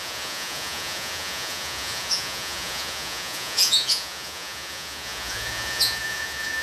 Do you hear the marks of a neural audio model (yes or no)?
yes